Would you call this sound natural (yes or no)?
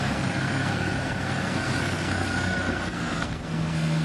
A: no